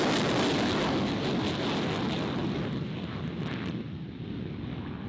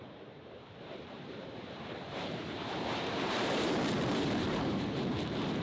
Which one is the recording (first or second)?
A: first